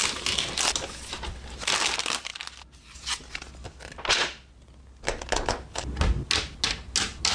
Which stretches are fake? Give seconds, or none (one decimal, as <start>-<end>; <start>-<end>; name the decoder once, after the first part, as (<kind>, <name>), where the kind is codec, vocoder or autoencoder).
none